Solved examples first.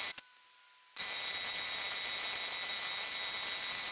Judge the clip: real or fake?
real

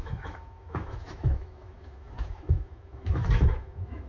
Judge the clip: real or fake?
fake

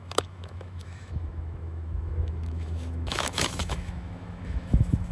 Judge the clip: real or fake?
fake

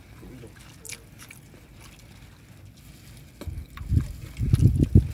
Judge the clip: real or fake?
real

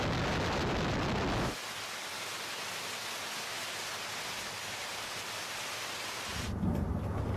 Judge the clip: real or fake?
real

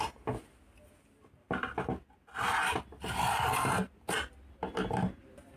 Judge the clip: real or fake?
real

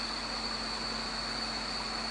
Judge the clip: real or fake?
real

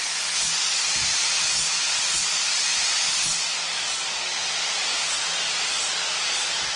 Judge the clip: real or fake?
real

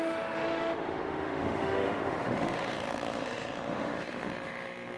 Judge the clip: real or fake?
fake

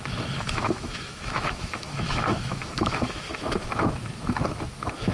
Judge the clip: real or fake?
fake